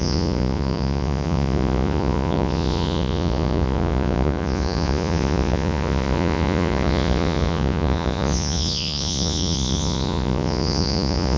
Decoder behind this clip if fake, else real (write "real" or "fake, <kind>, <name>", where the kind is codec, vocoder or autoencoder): fake, vocoder, Vocos